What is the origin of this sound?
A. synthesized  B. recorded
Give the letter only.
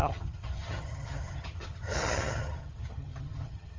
A